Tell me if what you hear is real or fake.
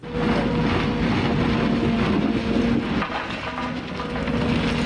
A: real